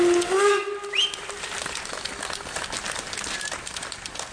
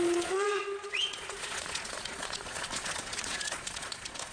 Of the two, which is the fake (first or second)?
second